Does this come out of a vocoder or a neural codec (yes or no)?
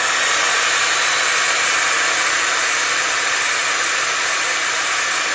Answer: yes